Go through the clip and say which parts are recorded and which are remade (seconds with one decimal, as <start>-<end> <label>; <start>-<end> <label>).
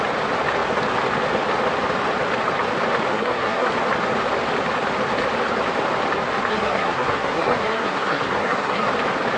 0.0-3.1 recorded; 3.1-3.7 remade; 3.7-6.5 recorded; 6.5-8.9 remade; 8.9-9.4 recorded